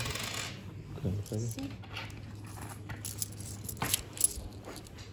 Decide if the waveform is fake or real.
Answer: real